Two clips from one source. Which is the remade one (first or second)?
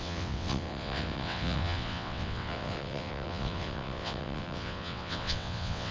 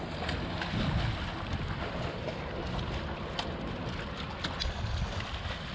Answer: first